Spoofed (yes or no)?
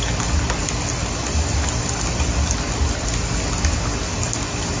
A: no